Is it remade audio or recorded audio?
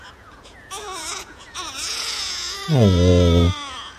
remade